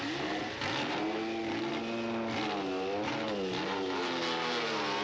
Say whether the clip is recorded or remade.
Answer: recorded